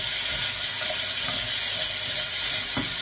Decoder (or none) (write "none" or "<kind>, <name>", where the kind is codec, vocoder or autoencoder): none